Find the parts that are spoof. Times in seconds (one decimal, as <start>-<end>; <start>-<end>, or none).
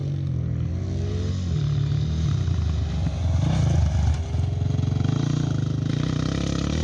none